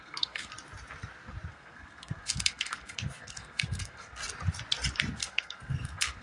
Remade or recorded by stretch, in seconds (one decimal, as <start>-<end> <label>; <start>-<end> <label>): 0.0-0.5 remade; 0.5-1.5 recorded; 1.5-4.2 remade; 4.2-5.1 recorded; 5.1-6.2 remade